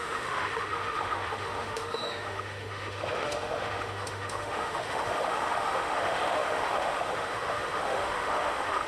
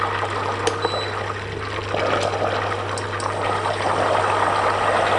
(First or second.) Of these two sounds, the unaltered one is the second